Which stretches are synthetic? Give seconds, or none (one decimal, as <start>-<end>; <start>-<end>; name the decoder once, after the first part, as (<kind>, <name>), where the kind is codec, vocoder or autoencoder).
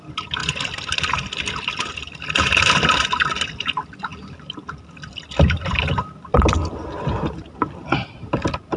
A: 0.4-1.5 (vocoder, BigVGAN v2); 4.1-5.1